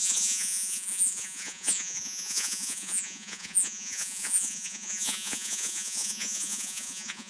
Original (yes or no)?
no